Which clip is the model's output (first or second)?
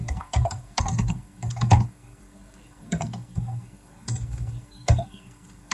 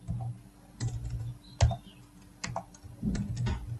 first